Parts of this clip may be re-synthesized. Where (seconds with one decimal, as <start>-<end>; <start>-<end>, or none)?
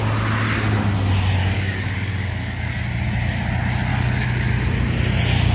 1.4-2.8; 3.9-4.5